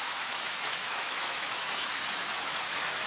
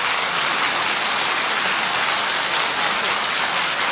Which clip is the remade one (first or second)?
first